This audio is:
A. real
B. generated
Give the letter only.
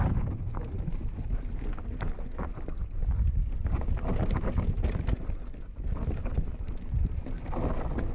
A